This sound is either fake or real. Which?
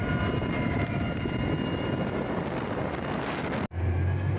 real